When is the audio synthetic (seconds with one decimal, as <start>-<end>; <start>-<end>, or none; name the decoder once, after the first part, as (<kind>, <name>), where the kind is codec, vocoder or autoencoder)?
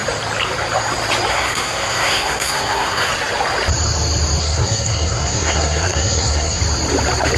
1.3-3.1 (codec, SNAC); 4.4-6.6